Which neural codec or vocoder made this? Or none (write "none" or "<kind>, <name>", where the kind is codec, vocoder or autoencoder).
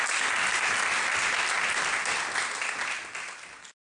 none